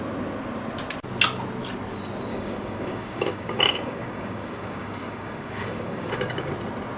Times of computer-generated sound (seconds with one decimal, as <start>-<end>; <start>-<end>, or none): 2.3-6.5